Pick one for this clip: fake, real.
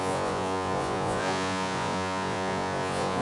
fake